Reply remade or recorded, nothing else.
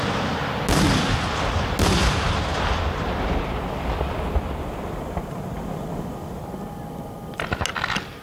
recorded